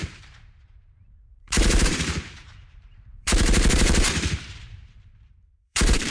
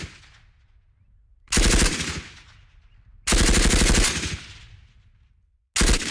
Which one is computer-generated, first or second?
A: first